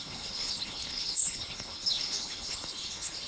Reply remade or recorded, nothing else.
remade